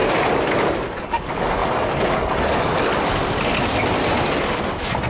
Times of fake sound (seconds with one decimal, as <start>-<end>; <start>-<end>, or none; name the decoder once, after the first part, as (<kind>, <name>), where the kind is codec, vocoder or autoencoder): 1.0-3.5 (codec, DAC)